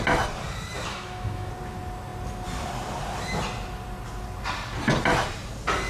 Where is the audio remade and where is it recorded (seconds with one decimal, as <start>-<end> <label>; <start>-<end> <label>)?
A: 0.0-0.9 recorded; 0.9-1.5 remade; 1.5-5.9 recorded

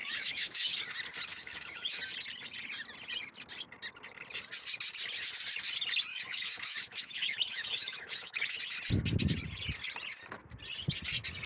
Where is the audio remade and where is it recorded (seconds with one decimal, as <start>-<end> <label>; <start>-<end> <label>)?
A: 0.0-0.8 remade; 0.8-1.3 recorded; 1.3-2.0 remade; 2.0-6.1 recorded; 6.1-8.6 remade; 8.6-11.5 recorded

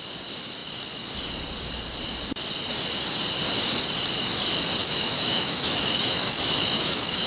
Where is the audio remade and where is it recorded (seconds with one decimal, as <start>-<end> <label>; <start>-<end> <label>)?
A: 0.0-4.8 recorded; 4.8-7.3 remade

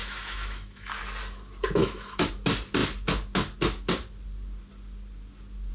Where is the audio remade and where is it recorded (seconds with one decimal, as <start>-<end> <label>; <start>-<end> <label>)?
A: 0.0-1.0 remade; 1.0-1.8 recorded; 1.8-2.3 remade; 2.3-5.7 recorded

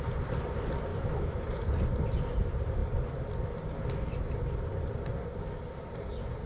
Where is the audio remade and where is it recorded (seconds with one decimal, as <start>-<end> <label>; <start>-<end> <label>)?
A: 0.0-0.9 recorded; 0.9-1.4 remade; 1.4-6.5 recorded

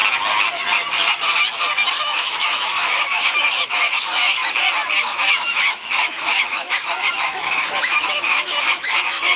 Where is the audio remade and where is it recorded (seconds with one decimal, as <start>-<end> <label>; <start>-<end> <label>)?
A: 0.0-1.9 recorded; 1.9-4.4 remade; 4.4-5.0 recorded; 5.0-9.4 remade